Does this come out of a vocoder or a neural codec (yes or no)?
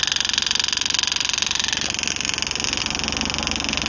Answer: no